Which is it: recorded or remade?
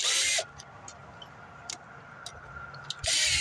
recorded